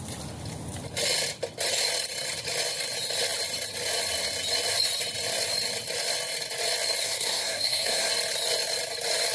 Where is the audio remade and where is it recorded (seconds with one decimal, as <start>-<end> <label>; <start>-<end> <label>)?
0.0-7.0 recorded; 7.0-8.1 remade; 8.1-9.3 recorded